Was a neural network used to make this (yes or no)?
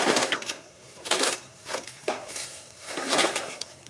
yes